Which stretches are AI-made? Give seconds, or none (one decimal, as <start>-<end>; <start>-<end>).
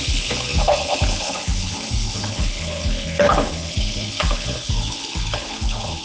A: 0.0-6.0